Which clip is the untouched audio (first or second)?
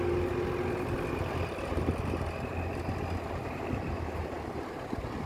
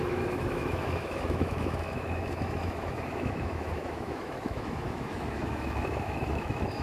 first